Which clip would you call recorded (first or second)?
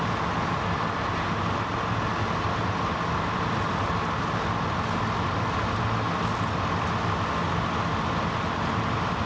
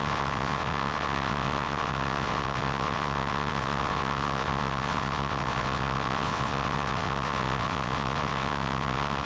first